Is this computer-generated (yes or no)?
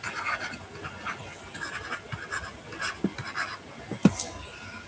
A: no